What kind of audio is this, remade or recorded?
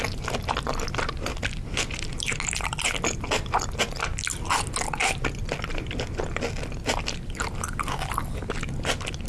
recorded